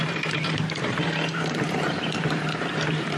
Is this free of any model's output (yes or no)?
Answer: no